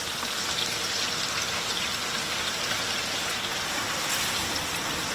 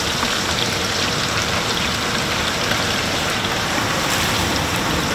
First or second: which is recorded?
first